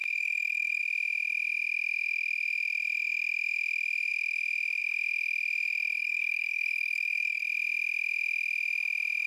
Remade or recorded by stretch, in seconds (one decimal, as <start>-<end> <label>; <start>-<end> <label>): 0.0-0.8 remade; 0.8-6.0 recorded; 6.0-7.4 remade; 7.4-9.3 recorded